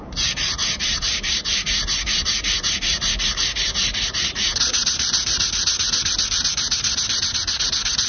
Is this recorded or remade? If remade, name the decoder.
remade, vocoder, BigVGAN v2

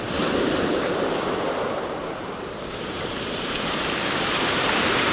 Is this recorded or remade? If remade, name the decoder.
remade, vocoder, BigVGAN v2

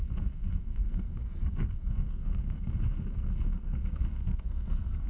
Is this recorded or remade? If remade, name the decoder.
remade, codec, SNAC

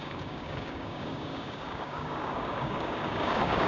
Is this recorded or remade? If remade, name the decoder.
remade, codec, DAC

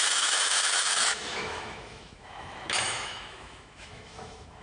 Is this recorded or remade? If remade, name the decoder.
remade, autoencoder, DAC-VAE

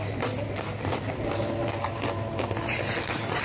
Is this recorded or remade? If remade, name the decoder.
recorded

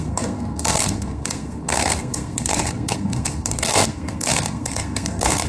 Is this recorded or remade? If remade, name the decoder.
remade, codec, SNAC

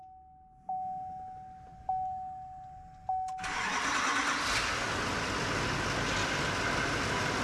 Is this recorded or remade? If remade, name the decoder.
recorded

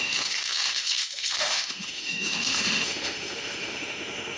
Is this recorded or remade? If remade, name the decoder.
remade, autoencoder, DAC-VAE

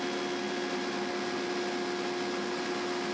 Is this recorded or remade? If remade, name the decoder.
recorded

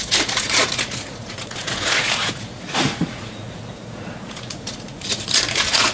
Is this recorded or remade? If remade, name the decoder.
remade, vocoder, Vocos